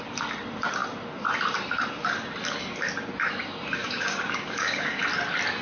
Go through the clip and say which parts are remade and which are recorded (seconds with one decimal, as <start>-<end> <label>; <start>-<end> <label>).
0.0-3.8 recorded; 3.8-5.0 remade; 5.0-5.6 recorded